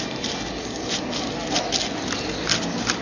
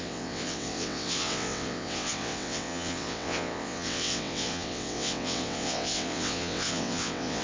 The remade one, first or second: second